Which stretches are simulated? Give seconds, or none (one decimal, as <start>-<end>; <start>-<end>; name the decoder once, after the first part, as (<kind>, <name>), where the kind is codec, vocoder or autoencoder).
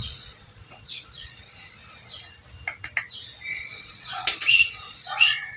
0.0-1.8 (vocoder, Vocos); 3.5-5.6